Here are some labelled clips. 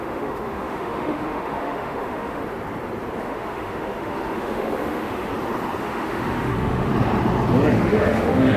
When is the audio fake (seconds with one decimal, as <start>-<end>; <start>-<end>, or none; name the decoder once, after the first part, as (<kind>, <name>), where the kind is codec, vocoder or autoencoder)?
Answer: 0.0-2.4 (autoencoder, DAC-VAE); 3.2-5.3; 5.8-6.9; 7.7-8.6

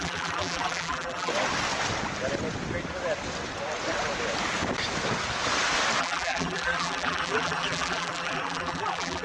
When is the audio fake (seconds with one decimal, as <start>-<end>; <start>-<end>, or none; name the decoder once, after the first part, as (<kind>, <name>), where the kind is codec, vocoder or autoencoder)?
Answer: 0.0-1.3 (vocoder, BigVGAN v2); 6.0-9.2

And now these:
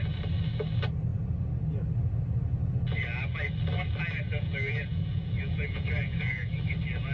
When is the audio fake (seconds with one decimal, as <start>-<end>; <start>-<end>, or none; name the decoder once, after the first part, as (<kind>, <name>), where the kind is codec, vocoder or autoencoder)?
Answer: 4.3-6.5 (vocoder, Vocos)

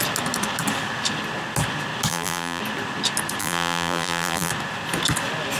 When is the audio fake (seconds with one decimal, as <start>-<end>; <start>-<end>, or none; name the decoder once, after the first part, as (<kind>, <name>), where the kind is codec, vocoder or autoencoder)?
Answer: 2.1-2.6 (vocoder, BigVGAN v2); 3.4-4.5

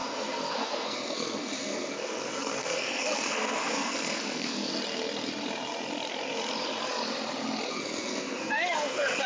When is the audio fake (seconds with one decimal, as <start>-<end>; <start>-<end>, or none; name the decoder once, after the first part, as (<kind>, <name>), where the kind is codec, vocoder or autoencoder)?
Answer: 0.0-4.7 (codec, SNAC); 7.7-9.3

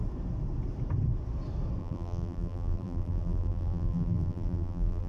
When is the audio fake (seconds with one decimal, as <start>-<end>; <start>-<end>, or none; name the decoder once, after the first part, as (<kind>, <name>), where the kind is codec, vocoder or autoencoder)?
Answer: 1.8-5.1 (vocoder, BigVGAN v2)